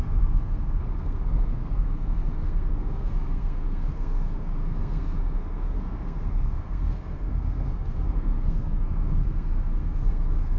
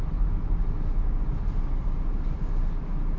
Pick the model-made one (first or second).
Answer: first